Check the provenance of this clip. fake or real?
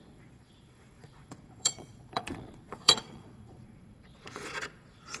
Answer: fake